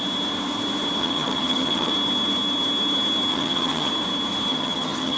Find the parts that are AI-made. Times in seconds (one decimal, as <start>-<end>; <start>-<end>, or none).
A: 1.0-1.9; 3.3-3.9; 4.5-5.2